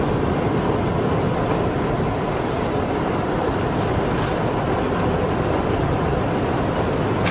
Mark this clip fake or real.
fake